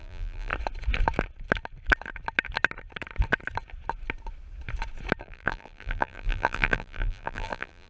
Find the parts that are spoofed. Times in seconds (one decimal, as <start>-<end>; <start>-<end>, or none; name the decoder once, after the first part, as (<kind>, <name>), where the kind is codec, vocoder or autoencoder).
0.0-0.5 (vocoder, BigVGAN v2); 5.2-7.9